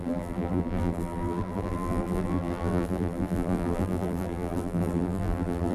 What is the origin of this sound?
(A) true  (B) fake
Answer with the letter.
B